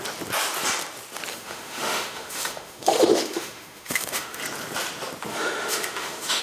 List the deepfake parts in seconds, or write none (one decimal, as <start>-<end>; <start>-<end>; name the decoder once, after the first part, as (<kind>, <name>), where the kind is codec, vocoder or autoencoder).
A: 1.3-4.4 (autoencoder, DAC-VAE); 5.3-6.4